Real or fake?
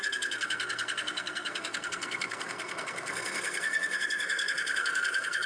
fake